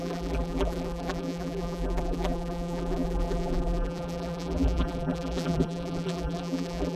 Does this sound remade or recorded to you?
remade